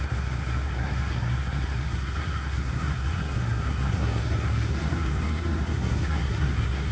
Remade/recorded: remade